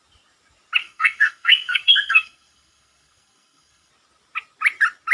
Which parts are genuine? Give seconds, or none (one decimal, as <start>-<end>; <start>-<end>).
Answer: 0.0-0.8; 3.9-5.1